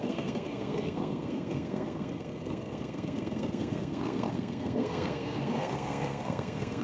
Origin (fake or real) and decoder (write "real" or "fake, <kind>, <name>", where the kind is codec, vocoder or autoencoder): fake, codec, SNAC